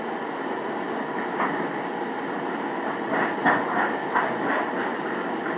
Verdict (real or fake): real